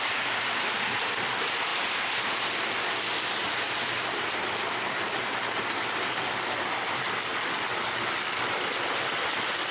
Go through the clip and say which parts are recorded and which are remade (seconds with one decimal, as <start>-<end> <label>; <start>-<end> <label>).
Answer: 0.0-1.7 remade; 1.7-4.2 recorded; 4.2-7.3 remade; 7.3-7.9 recorded; 7.9-9.7 remade